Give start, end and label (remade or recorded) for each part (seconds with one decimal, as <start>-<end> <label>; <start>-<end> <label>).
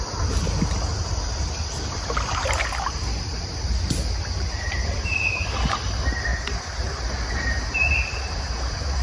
0.0-9.0 recorded